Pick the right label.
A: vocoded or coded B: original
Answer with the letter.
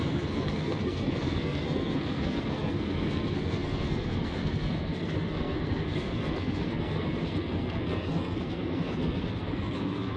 A